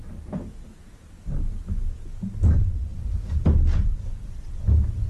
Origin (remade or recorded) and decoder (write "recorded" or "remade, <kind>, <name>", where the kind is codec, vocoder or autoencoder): recorded